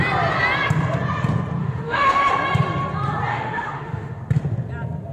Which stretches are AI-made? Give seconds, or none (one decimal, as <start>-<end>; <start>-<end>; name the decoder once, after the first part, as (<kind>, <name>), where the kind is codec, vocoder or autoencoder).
1.6-2.3 (autoencoder, DAC-VAE); 3.3-4.2